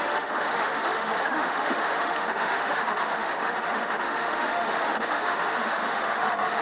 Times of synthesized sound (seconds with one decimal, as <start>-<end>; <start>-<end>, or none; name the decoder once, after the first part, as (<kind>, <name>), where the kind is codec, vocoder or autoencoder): 0.0-6.6 (autoencoder, DAC-VAE)